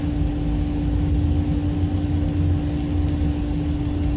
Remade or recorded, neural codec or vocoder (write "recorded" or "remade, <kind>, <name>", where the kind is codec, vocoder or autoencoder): recorded